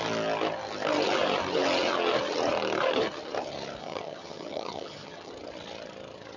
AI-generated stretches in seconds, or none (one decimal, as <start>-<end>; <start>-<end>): 3.8-5.3